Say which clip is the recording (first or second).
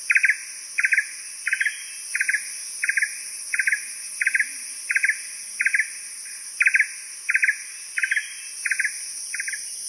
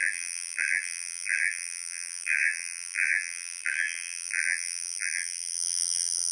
first